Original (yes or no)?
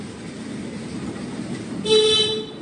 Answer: yes